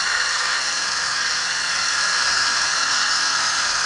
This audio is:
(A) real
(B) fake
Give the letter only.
B